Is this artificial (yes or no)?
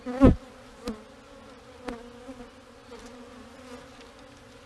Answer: no